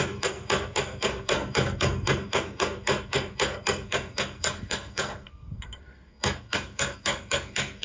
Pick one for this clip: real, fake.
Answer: fake